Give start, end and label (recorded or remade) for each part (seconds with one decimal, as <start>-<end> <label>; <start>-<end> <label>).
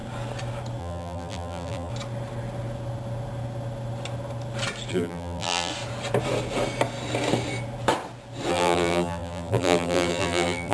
0.0-0.8 recorded; 0.8-1.9 remade; 1.9-4.9 recorded; 4.9-5.7 remade; 5.7-8.5 recorded; 8.5-10.7 remade